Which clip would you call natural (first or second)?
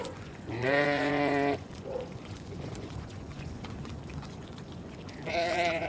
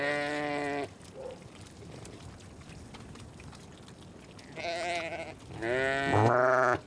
second